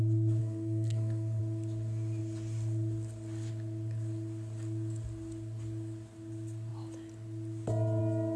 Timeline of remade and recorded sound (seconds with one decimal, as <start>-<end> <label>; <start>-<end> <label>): 0.0-0.4 recorded; 0.4-1.4 remade; 1.4-8.4 recorded